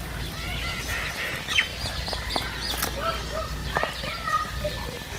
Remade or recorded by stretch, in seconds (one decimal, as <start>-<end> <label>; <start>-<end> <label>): 0.0-5.2 recorded